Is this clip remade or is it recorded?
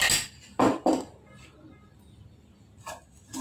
recorded